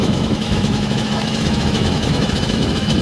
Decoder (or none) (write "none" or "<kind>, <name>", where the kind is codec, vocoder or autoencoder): autoencoder, DAC-VAE